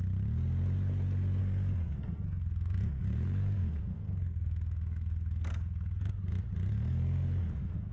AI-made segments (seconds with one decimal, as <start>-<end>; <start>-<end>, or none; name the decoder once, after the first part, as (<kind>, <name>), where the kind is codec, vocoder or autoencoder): 1.4-6.1 (codec, SNAC); 6.7-7.9